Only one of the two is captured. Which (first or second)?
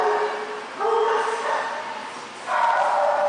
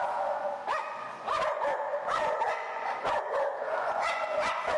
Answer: first